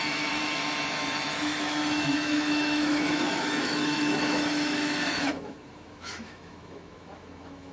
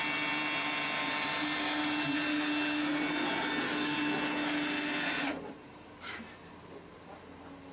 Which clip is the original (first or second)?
second